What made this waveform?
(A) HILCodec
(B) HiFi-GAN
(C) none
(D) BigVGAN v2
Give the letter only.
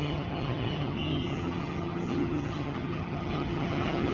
B